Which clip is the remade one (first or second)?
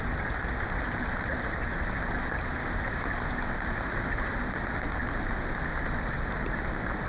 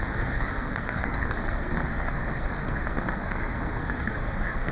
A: second